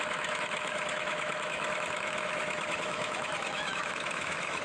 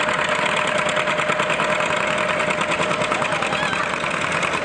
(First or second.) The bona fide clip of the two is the second